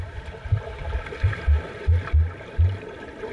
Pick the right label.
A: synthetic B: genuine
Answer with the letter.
B